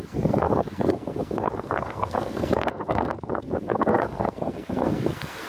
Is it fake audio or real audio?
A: fake